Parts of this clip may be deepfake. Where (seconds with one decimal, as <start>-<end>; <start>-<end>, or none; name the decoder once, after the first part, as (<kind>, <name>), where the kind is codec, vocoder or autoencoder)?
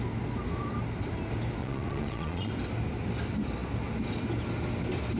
1.6-2.5 (vocoder, Vocos)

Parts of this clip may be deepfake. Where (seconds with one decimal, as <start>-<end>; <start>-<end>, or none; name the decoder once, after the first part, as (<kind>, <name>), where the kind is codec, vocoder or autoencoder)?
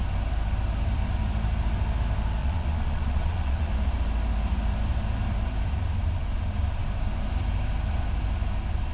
2.4-3.7 (vocoder, Vocos)